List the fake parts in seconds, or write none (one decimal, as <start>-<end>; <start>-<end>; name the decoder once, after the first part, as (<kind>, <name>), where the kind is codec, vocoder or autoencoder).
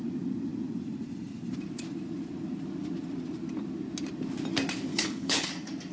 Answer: 4.9-5.5 (codec, HILCodec)